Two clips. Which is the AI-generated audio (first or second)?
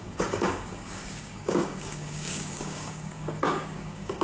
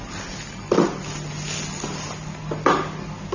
first